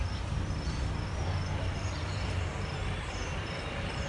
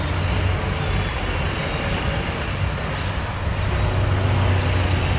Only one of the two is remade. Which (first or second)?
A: first